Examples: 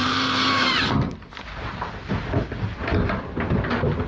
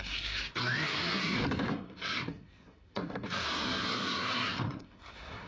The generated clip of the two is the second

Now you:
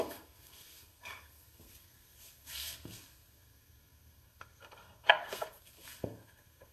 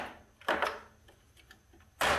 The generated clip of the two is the first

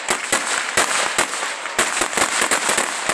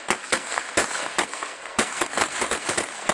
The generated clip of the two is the second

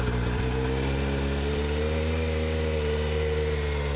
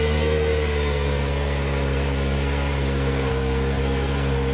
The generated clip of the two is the second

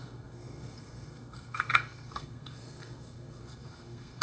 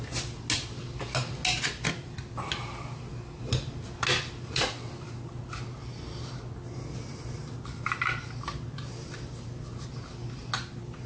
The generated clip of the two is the first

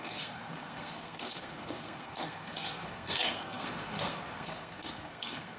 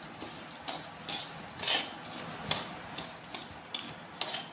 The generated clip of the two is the first